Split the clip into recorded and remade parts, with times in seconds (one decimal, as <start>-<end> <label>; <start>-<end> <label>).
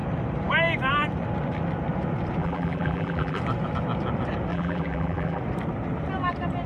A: 0.0-2.4 recorded; 2.4-3.4 remade; 3.4-4.5 recorded; 4.5-5.4 remade; 5.4-6.7 recorded